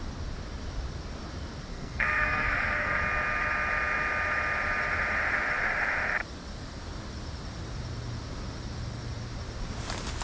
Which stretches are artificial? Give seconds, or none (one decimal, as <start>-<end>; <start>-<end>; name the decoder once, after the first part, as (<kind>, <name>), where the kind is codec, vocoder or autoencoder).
1.7-3.0 (codec, SNAC)